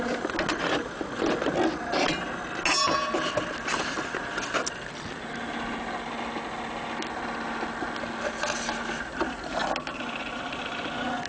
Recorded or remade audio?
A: recorded